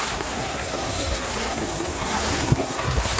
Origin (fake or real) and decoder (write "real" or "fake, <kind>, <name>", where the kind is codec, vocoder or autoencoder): fake, codec, SNAC